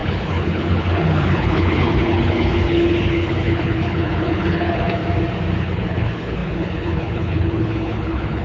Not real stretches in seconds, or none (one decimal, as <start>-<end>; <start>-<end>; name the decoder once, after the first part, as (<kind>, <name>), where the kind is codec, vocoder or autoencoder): 0.0-5.0 (codec, HILCodec); 5.6-8.4